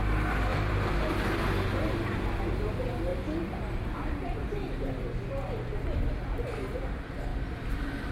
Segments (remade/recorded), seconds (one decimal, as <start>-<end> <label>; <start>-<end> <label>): 0.0-0.5 recorded; 0.5-1.3 remade; 1.3-3.1 recorded; 3.1-4.8 remade; 4.8-7.3 recorded; 7.3-8.1 remade